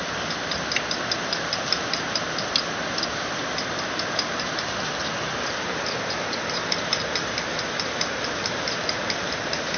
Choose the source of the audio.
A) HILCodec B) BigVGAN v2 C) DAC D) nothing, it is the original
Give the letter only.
D